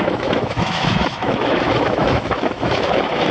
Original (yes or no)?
no